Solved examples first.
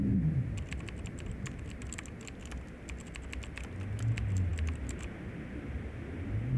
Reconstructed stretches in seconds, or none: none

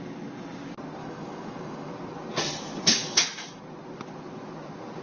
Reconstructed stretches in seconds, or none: 1.0-1.9 (autoencoder, DAC-VAE); 2.9-3.6

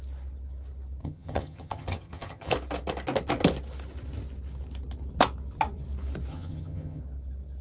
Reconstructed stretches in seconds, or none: 1.0-2.5 (vocoder, HiFi-GAN); 6.3-7.0

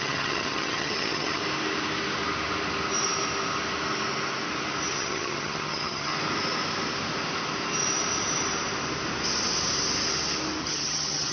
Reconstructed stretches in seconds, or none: 0.0-1.4 (vocoder, HiFi-GAN); 4.9-6.1; 10.6-11.3

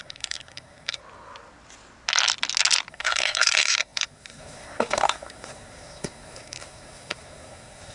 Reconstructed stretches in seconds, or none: 0.0-1.0 (codec, SNAC); 2.9-7.9

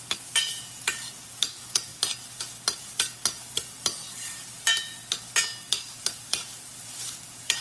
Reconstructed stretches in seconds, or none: 0.0-1.9 (vocoder, BigVGAN v2); 3.4-5.0; 5.7-7.6